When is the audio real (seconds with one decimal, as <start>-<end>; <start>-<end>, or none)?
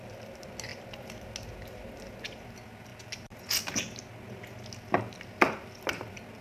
0.0-6.4